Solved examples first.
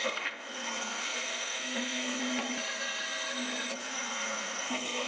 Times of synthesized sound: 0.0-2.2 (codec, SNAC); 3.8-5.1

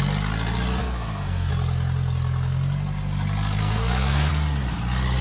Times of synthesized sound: 0.8-1.5 (codec, SNAC); 3.6-4.3

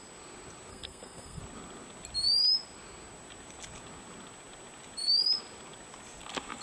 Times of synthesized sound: 0.7-1.4 (codec, SNAC)

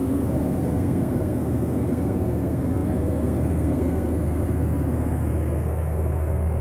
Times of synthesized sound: 0.0-6.6 (codec, SNAC)

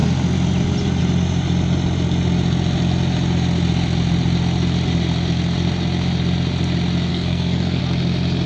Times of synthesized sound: 7.1-7.8 (codec, SNAC)

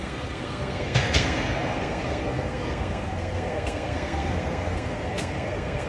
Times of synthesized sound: 0.0-5.9 (codec, SNAC)

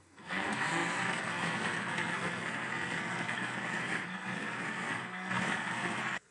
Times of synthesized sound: 0.0-6.3 (codec, SNAC)

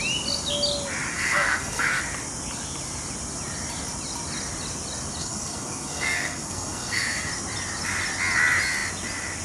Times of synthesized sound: 1.1-2.0 (codec, SNAC); 5.2-7.3